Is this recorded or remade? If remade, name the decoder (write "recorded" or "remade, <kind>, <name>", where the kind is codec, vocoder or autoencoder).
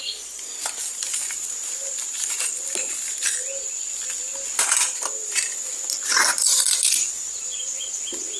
recorded